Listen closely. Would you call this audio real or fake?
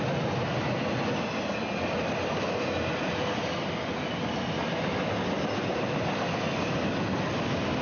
real